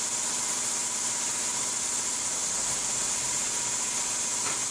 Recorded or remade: recorded